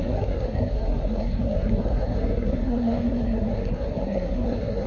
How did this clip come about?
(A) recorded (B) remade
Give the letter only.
B